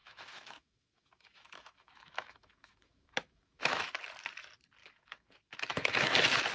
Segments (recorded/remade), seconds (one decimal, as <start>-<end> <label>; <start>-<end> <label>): 0.0-3.9 remade; 3.9-4.8 recorded; 4.8-6.0 remade; 6.0-6.5 recorded